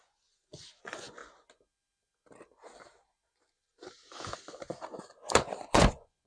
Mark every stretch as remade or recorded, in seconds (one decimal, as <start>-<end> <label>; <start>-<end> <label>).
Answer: 0.0-1.2 remade; 1.2-5.0 recorded; 5.0-6.3 remade